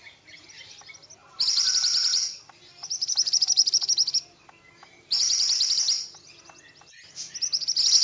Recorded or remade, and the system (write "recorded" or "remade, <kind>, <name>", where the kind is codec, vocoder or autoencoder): recorded